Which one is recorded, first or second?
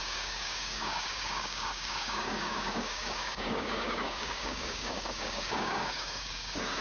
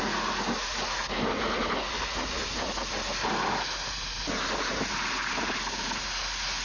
second